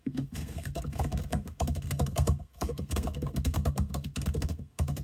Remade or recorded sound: remade